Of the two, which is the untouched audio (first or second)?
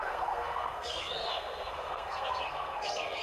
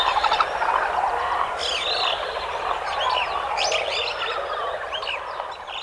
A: second